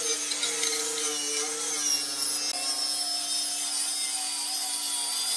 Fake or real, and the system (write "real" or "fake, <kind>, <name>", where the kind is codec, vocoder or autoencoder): real